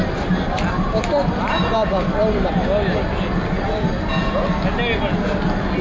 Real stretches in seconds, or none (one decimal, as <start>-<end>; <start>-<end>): 0.0-1.2; 2.2-5.8